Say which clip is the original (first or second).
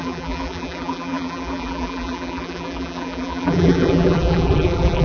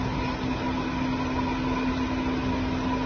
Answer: second